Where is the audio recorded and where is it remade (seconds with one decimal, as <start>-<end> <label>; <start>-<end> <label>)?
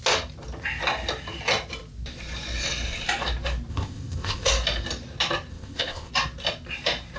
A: 0.0-3.7 recorded; 3.7-4.5 remade; 4.5-5.5 recorded; 5.5-6.1 remade; 6.1-7.2 recorded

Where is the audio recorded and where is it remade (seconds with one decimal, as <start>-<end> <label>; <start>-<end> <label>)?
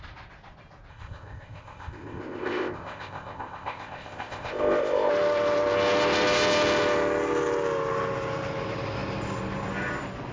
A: 0.0-0.9 recorded; 0.9-5.1 remade; 5.1-10.3 recorded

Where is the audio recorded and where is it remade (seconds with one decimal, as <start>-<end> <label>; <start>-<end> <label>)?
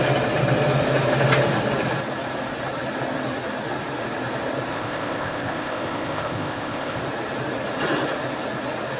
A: 0.0-4.7 recorded; 4.7-7.0 remade; 7.0-9.0 recorded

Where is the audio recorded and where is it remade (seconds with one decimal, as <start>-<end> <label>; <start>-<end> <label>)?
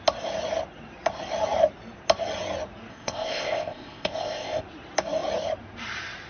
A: 0.0-2.9 recorded; 2.9-4.6 remade; 4.6-6.3 recorded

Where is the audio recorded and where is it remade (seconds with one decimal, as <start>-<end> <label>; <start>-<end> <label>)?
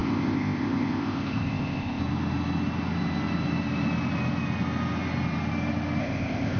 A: 0.0-2.0 remade; 2.0-6.0 recorded; 6.0-6.6 remade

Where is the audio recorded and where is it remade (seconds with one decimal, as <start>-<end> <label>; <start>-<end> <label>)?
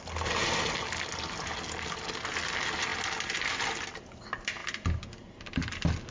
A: 0.0-6.1 recorded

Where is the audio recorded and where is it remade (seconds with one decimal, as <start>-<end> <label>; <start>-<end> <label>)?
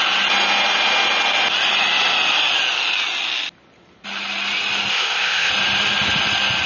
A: 0.0-4.9 recorded; 4.9-5.5 remade; 5.5-6.7 recorded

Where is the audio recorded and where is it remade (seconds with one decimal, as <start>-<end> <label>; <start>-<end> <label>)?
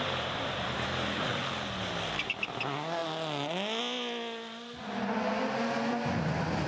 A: 0.0-6.7 recorded